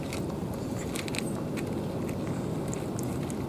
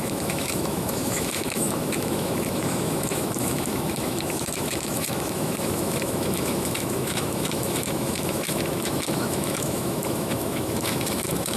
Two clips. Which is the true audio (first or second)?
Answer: first